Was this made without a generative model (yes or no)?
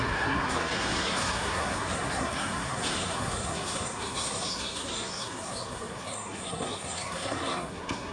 no